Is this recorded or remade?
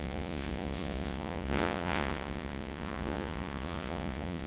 remade